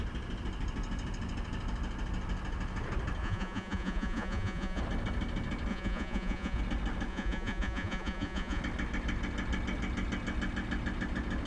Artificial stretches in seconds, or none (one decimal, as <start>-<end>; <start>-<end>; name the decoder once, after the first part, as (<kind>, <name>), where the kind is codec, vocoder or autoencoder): 3.2-4.8 (vocoder, Vocos); 5.7-6.6; 7.1-8.6